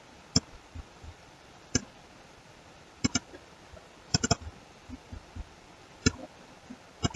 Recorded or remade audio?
recorded